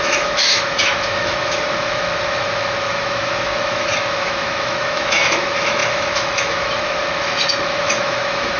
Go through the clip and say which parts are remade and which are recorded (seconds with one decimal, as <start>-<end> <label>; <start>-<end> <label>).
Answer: 0.0-8.6 remade